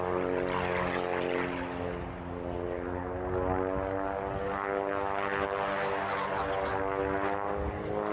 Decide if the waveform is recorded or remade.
recorded